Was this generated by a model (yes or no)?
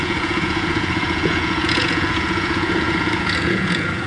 yes